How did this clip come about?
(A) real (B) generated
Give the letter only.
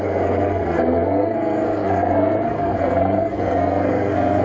B